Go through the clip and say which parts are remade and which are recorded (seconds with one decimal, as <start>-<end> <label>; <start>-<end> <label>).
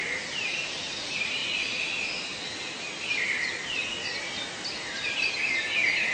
0.0-1.4 remade; 1.4-5.1 recorded; 5.1-6.1 remade